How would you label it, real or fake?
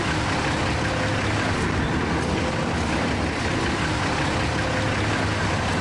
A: real